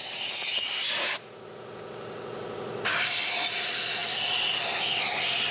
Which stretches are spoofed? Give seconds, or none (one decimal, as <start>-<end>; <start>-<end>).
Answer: none